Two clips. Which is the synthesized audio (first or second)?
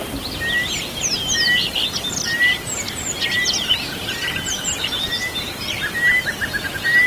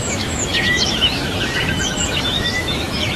second